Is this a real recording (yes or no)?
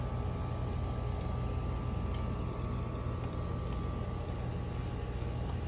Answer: yes